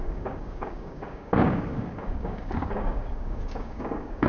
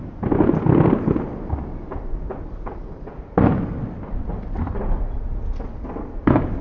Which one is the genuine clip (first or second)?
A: second